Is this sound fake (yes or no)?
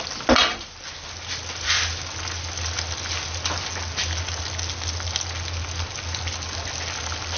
no